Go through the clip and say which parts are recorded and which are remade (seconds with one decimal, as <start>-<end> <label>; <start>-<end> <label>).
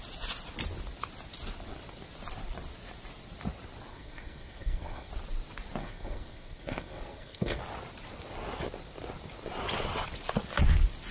0.0-3.9 recorded; 3.9-5.1 remade; 5.1-5.8 recorded; 5.8-7.6 remade; 7.6-11.1 recorded